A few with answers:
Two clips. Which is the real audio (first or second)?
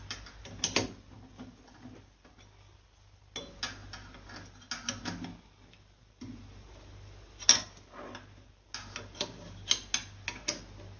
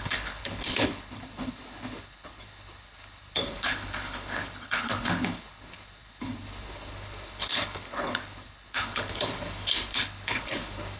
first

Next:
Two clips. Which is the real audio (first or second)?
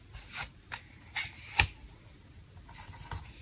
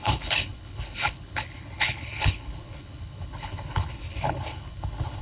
first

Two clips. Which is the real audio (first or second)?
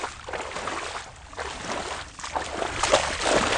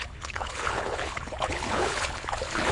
first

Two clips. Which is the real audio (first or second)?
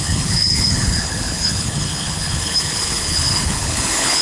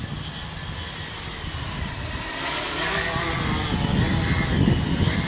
second